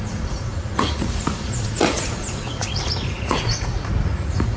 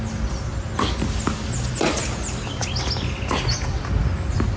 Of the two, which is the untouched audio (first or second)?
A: second